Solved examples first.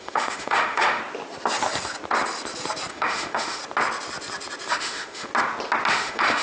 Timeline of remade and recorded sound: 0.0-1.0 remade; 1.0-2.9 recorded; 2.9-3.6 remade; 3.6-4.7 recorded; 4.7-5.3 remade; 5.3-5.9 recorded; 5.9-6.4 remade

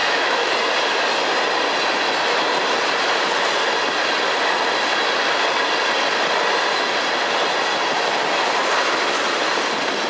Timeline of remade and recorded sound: 0.0-0.5 remade; 0.5-10.1 recorded

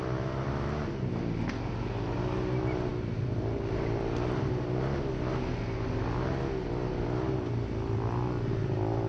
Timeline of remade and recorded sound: 0.0-9.1 recorded